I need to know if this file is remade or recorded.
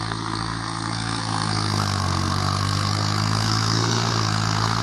remade